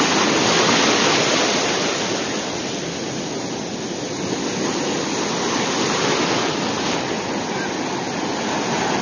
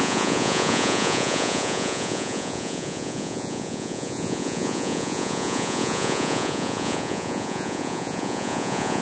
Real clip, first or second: first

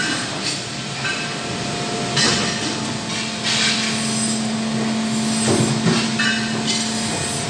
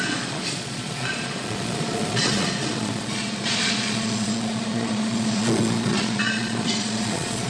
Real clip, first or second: first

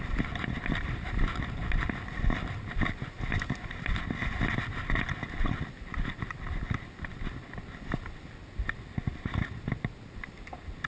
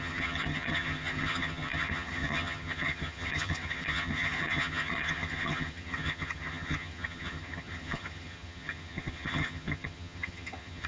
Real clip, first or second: first